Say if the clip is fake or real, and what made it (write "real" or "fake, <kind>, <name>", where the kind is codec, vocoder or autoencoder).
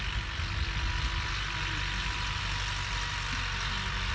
real